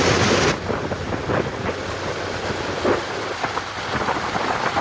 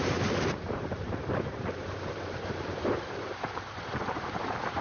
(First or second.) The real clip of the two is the first